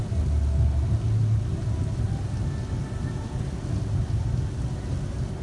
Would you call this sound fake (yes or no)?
no